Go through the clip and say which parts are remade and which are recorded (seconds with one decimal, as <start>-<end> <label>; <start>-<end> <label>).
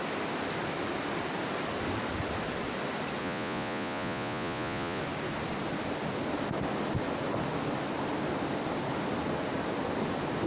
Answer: 0.0-3.2 recorded; 3.2-5.0 remade; 5.0-10.5 recorded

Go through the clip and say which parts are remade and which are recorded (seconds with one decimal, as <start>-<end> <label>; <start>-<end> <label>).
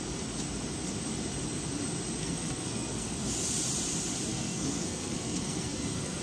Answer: 0.0-2.2 recorded; 2.2-3.3 remade; 3.3-4.3 recorded; 4.3-6.2 remade